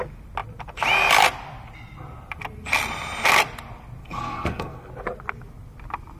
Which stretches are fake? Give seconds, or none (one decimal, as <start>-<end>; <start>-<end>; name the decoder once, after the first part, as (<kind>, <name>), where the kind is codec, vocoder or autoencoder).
4.0-4.9 (codec, SNAC)